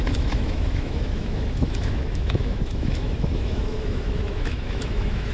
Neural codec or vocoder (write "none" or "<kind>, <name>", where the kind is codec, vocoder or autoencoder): autoencoder, DAC-VAE